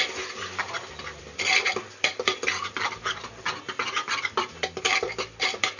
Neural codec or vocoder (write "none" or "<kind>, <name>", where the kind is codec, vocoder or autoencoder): vocoder, BigVGAN v2